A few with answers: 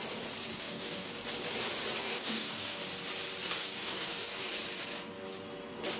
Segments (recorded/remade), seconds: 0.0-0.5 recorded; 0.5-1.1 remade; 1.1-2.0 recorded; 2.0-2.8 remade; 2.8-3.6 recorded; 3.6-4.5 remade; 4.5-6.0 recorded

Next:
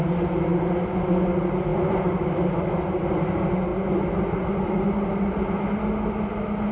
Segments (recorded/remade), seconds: 0.0-6.7 recorded